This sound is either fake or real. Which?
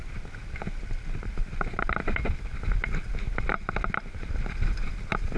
real